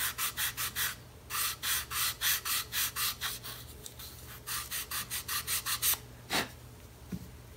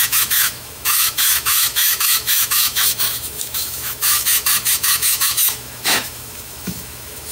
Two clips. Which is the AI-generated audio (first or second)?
second